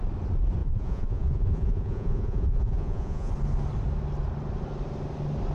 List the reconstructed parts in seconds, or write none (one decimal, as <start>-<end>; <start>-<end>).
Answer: 0.6-3.3